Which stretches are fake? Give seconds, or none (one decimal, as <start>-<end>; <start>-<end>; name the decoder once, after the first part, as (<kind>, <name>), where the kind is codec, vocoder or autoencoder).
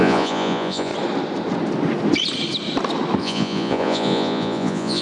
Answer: 0.0-0.9 (vocoder, Vocos); 3.2-5.0